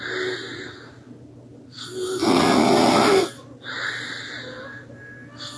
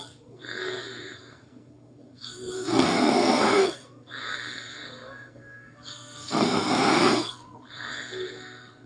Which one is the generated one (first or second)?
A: second